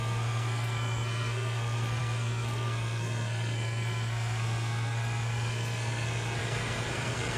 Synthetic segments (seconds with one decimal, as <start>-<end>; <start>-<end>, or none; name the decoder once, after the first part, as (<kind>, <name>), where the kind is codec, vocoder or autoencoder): 0.0-7.4 (codec, SNAC)